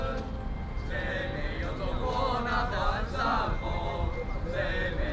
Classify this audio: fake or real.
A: real